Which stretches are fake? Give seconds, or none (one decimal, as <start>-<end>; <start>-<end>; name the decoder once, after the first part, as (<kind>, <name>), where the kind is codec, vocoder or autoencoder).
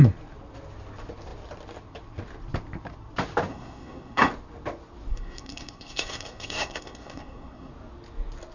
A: 3.5-4.3 (codec, SNAC); 5.1-7.7